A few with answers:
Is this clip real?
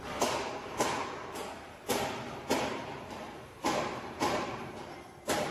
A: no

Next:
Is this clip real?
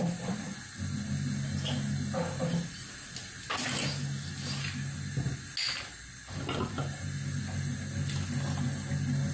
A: yes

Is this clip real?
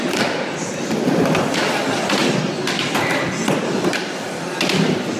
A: yes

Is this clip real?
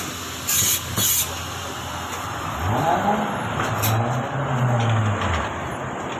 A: yes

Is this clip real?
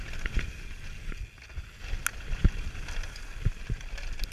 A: yes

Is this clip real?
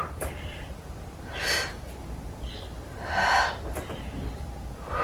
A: yes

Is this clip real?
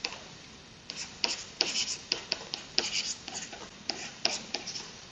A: no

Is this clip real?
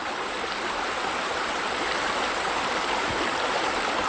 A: no